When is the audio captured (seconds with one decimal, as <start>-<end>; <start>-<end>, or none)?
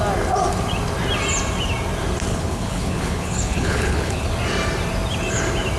0.0-2.3; 4.3-5.8